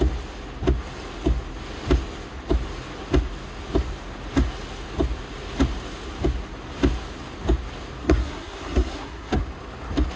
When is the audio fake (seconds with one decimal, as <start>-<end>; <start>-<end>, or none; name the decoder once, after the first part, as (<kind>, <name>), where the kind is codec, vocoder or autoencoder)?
8.0-9.4 (codec, SNAC)